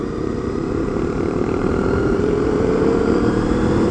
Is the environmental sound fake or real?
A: fake